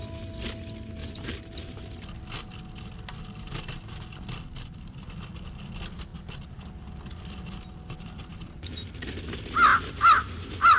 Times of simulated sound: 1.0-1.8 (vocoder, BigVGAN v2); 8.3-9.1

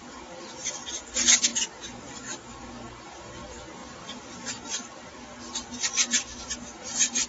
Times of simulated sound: 0.0-1.5 (vocoder, BigVGAN v2); 2.6-7.3

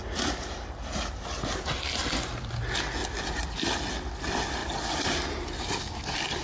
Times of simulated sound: none

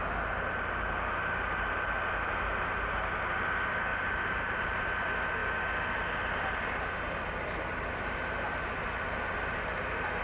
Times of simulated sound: 3.9-4.8 (vocoder, BigVGAN v2)

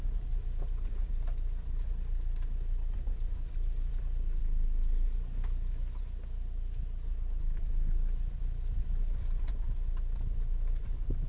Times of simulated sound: 0.0-4.4 (vocoder, BigVGAN v2); 7.4-11.3

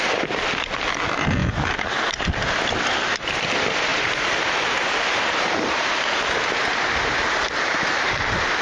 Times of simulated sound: 1.4-2.0 (vocoder, BigVGAN v2); 3.9-8.2

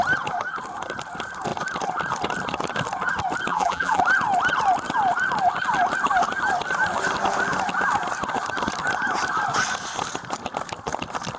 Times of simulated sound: 3.5-4.0 (vocoder, BigVGAN v2)

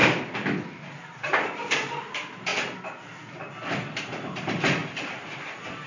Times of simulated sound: 1.0-2.5 (vocoder, BigVGAN v2); 4.0-5.9